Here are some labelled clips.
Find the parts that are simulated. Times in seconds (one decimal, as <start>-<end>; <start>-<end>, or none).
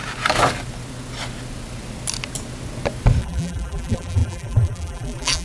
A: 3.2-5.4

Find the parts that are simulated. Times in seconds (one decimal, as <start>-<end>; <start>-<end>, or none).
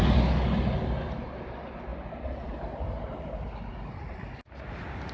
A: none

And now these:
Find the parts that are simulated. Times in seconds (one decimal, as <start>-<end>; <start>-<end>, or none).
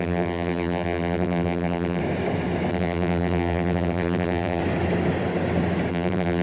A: 0.0-2.0; 2.7-4.6; 5.9-6.4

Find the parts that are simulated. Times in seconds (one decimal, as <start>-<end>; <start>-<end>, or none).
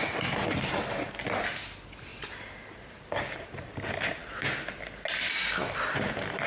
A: 0.0-1.1; 2.1-3.7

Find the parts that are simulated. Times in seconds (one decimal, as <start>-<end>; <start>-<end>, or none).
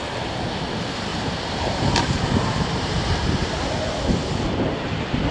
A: 1.1-3.1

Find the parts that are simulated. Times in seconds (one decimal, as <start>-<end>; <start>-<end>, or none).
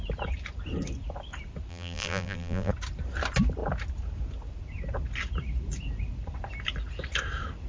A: 1.7-2.7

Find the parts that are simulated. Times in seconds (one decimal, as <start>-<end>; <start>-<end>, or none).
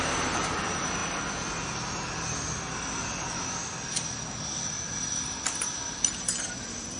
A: 0.0-1.0; 5.2-7.0